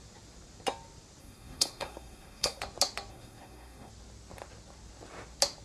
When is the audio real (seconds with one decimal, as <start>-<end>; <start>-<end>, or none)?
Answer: 0.0-1.2; 2.6-3.1; 3.9-5.6